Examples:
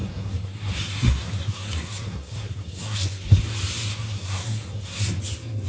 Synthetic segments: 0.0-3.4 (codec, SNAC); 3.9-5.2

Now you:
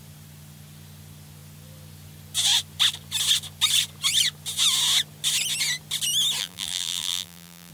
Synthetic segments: 6.4-7.7 (vocoder, BigVGAN v2)

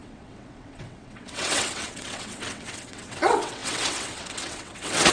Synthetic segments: 0.0-5.1 (vocoder, WaveNeXt)

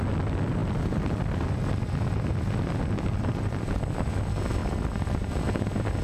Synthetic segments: 0.6-3.8 (vocoder, BigVGAN v2); 4.6-5.3

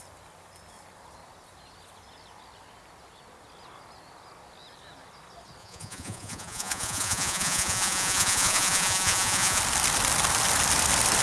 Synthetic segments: 5.6-9.6 (vocoder, Vocos)

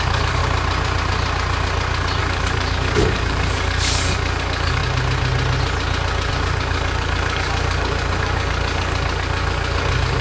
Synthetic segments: 0.0-0.4 (codec, DAC); 2.2-4.8; 6.3-10.2

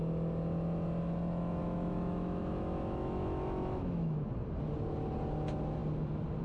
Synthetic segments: 1.6-4.3 (autoencoder, DAC-VAE)

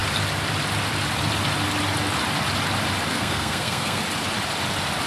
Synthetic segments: 3.1-4.0 (codec, SNAC)